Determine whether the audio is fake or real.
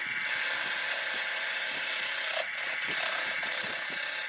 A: real